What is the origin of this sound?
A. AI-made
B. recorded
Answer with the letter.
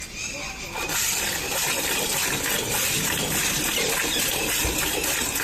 B